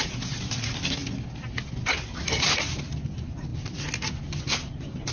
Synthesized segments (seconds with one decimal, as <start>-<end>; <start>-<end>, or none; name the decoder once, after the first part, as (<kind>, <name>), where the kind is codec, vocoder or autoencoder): none